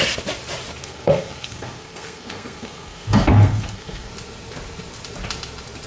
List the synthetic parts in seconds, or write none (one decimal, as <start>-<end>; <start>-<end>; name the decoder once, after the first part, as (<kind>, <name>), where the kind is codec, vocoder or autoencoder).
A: 0.8-4.1 (codec, SNAC)